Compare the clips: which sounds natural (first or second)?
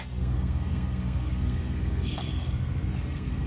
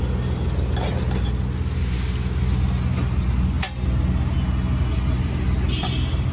second